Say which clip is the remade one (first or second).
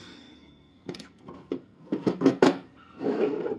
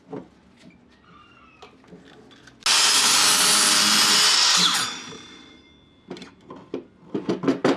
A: first